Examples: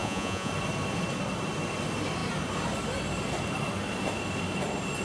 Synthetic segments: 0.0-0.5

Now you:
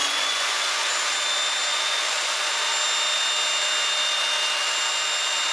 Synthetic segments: 0.0-0.9; 1.7-2.5

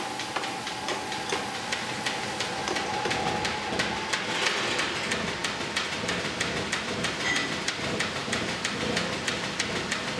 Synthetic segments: none

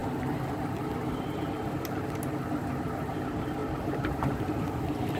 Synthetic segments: 3.6-5.2

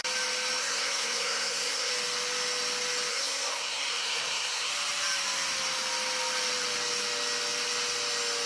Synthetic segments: 0.6-1.9; 3.1-4.7

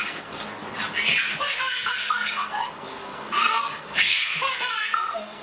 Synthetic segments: 0.0-0.6; 1.4-5.4

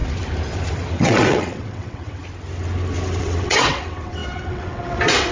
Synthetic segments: 0.9-2.2; 3.2-5.3

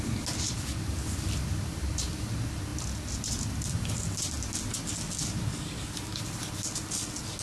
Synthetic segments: 5.5-6.2